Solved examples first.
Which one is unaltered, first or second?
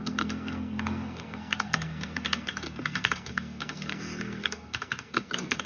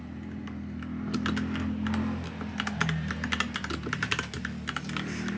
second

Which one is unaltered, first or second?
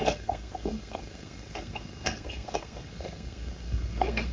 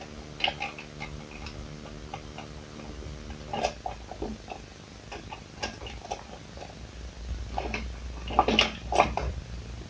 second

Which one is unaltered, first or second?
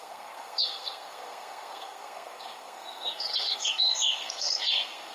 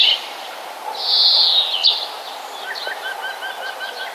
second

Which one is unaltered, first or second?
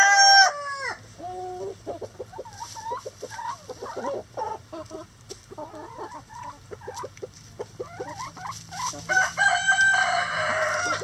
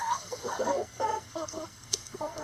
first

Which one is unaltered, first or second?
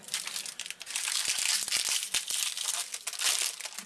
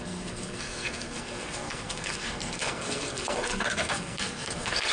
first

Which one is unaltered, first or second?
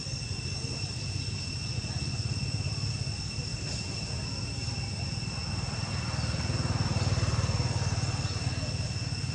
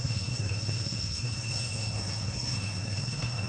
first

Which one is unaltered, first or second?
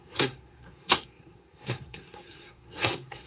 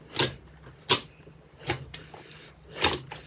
second